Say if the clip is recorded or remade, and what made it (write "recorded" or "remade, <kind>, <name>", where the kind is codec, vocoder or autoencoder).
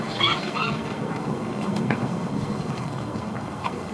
remade, codec, SNAC